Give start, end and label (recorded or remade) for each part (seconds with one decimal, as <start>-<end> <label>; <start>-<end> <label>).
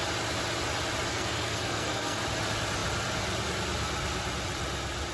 0.0-1.1 recorded; 1.1-2.2 remade; 2.2-5.1 recorded